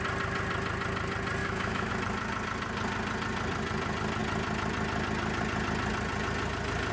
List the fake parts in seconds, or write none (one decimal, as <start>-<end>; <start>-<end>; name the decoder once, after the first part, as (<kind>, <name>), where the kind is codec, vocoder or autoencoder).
1.4-1.9 (autoencoder, DAC-VAE)